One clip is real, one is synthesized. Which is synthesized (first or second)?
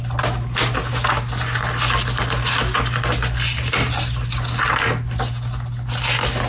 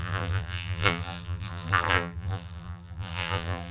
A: second